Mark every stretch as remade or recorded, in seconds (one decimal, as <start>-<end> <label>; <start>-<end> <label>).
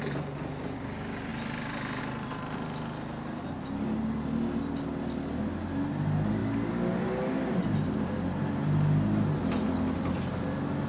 0.0-10.9 recorded